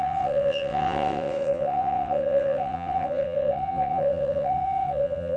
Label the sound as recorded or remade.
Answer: remade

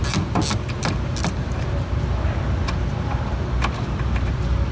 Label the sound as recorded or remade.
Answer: recorded